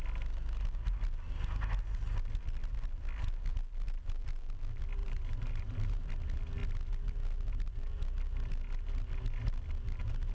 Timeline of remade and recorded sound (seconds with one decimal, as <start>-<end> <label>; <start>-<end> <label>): 0.0-5.0 recorded; 5.0-6.1 remade; 6.1-10.3 recorded